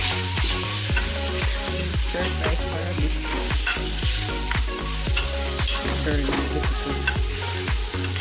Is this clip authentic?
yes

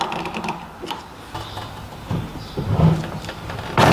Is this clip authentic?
yes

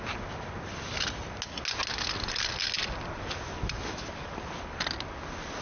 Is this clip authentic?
yes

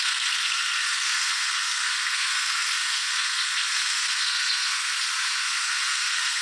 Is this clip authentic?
no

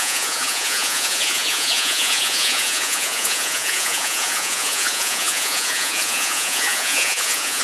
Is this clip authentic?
no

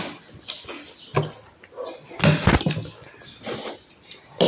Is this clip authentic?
yes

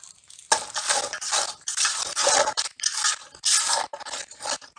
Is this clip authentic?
yes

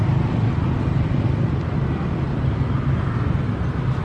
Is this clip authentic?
yes